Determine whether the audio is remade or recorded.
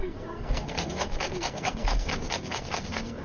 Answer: remade